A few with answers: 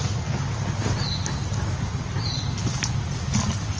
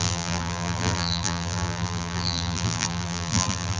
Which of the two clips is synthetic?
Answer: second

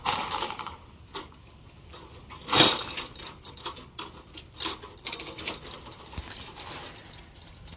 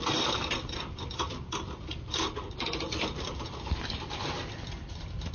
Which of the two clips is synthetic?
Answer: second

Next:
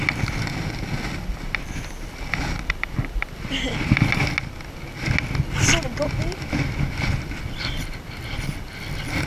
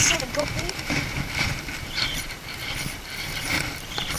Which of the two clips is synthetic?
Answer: second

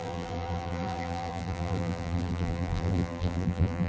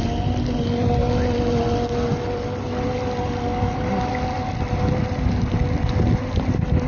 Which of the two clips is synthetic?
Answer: first